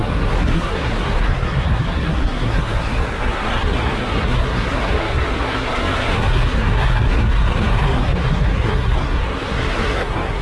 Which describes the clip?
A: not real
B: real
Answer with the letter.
A